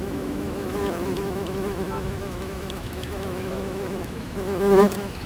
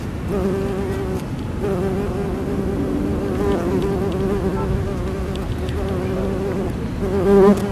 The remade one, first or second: first